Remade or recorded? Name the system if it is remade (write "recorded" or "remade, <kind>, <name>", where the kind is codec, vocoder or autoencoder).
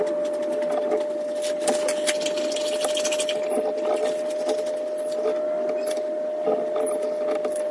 recorded